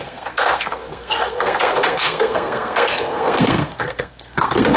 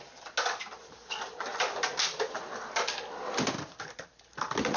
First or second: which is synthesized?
first